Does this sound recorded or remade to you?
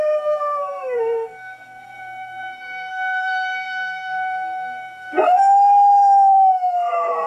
remade